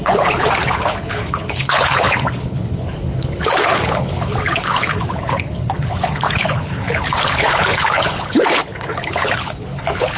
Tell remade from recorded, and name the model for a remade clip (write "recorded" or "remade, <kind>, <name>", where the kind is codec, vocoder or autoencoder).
remade, codec, HILCodec